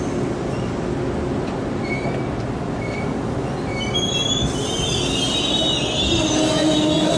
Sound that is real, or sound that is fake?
real